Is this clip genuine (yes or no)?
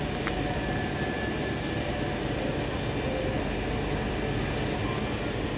yes